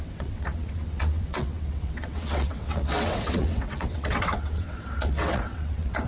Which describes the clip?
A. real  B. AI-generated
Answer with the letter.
B